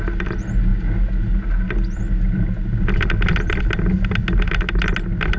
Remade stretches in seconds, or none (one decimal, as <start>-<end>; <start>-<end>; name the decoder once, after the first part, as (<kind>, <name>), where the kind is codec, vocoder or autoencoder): none